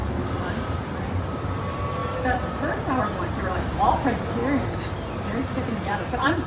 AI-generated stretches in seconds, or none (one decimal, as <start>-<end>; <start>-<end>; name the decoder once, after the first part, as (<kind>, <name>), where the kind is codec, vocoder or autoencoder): 0.0-4.4 (vocoder, BigVGAN v2); 5.1-6.5